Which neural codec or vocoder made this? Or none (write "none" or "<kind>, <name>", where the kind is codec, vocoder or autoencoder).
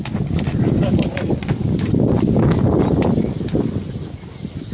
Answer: none